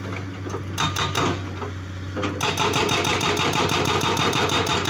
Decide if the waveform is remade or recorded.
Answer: recorded